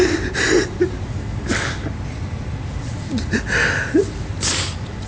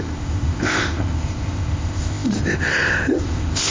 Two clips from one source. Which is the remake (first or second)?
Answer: second